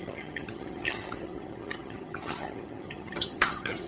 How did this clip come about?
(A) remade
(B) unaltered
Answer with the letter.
A